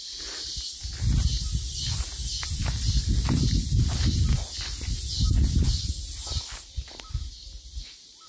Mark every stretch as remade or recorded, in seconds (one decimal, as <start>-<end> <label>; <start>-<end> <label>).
0.0-8.3 recorded